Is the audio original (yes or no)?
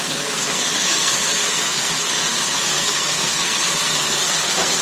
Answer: no